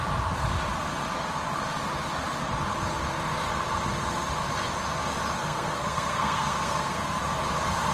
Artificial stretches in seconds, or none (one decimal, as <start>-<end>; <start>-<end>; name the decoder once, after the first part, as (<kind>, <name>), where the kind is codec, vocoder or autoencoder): 5.4-7.2 (codec, SNAC)